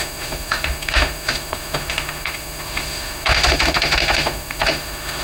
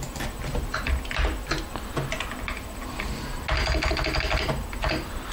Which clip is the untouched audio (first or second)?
second